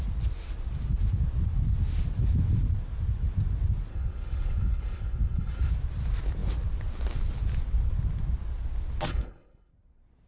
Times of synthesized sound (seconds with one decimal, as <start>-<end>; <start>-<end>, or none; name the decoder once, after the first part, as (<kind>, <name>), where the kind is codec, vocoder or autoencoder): 3.9-5.7 (codec, HILCodec); 9.1-9.7